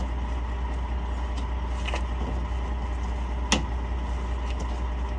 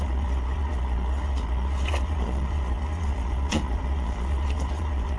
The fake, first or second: second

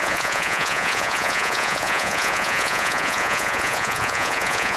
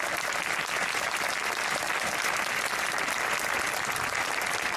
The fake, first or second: first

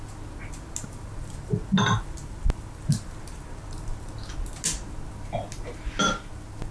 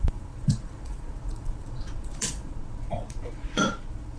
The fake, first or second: second